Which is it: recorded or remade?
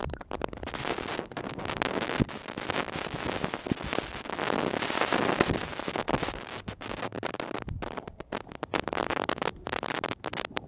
recorded